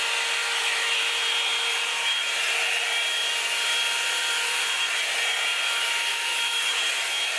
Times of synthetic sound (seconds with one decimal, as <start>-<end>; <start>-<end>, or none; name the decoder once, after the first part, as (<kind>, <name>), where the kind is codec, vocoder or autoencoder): 0.4-1.0 (autoencoder, DAC-VAE); 6.1-6.6